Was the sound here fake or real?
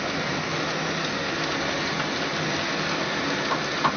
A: real